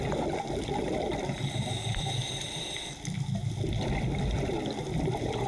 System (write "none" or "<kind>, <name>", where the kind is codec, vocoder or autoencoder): none